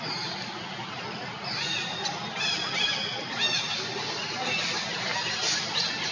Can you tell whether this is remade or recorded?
recorded